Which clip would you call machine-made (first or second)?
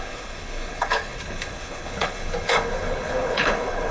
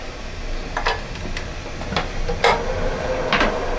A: first